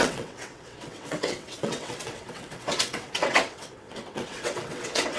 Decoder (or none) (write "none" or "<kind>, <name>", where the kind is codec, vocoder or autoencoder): vocoder, WaveNeXt